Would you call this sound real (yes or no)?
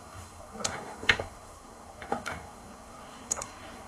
no